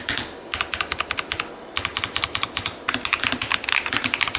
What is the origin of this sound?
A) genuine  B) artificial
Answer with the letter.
A